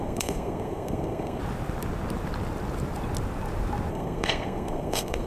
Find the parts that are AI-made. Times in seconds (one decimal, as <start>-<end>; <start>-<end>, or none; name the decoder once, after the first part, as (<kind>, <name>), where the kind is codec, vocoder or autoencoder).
0.0-1.4 (codec, SNAC); 3.9-5.3